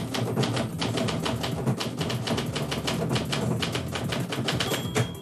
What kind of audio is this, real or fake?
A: real